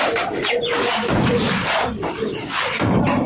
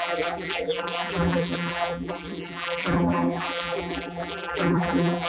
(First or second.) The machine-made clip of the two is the second